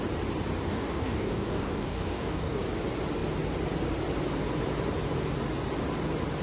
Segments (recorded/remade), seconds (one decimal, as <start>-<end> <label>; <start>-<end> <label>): 0.0-0.7 recorded; 0.7-2.6 remade; 2.6-6.4 recorded

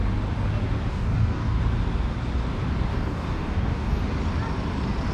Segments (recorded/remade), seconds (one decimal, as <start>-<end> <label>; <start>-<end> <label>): 0.0-0.9 recorded; 0.9-1.6 remade; 1.6-2.9 recorded; 2.9-4.0 remade; 4.0-5.1 recorded

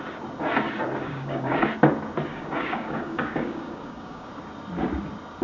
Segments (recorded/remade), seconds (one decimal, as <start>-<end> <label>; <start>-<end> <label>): 0.0-1.0 recorded; 1.0-1.7 remade; 1.7-2.3 recorded; 2.3-4.3 remade; 4.3-5.4 recorded

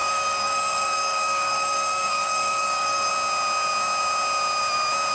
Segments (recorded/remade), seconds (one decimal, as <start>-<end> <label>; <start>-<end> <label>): 0.0-3.1 remade; 3.1-5.1 recorded